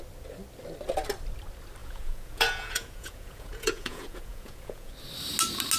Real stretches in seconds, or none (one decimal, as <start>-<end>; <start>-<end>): 0.0-1.8; 4.9-5.8